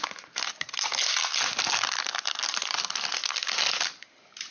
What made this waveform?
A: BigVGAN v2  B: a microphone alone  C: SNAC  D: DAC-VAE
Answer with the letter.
B